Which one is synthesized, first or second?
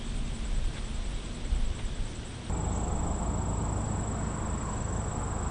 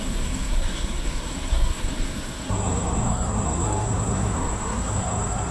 second